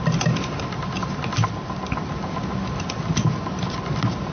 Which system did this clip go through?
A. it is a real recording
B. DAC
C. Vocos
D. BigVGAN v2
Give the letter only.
A